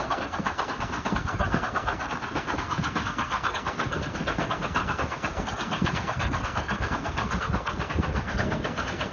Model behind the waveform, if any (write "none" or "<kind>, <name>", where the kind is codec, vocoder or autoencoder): codec, SNAC